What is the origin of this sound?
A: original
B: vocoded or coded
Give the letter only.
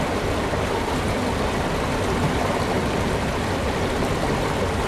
A